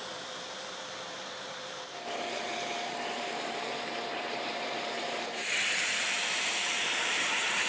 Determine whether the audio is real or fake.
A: fake